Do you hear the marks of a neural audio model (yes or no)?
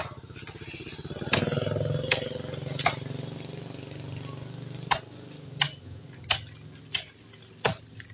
no